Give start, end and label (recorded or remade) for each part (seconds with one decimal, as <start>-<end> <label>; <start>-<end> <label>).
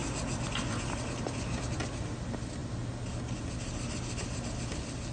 0.0-5.1 recorded